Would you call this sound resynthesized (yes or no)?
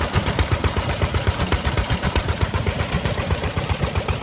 yes